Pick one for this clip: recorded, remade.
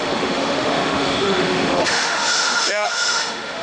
remade